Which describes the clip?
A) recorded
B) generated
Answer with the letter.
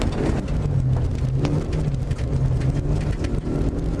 A